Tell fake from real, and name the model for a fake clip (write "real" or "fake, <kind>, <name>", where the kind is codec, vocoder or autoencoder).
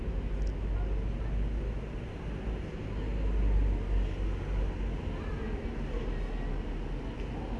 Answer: real